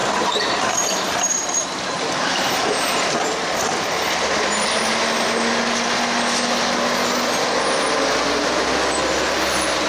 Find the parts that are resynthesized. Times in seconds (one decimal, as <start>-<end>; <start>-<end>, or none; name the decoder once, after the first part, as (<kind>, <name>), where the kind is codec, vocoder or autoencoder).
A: 0.0-3.1 (vocoder, BigVGAN v2)